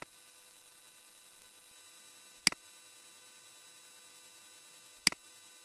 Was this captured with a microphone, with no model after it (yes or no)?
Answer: yes